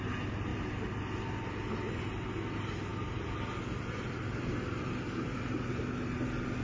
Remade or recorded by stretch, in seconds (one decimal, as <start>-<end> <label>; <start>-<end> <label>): 0.0-6.6 recorded